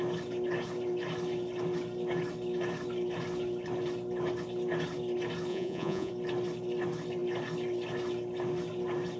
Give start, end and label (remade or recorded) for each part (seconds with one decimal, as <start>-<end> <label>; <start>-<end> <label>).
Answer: 0.0-5.5 recorded; 5.5-6.1 remade; 6.1-9.2 recorded